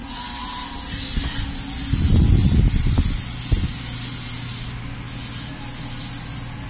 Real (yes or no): yes